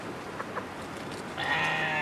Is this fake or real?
real